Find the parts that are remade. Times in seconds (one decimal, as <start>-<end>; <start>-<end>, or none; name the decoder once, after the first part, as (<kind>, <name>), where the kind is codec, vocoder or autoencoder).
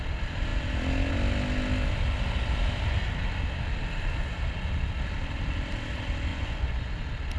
6.3-6.9 (vocoder, Vocos)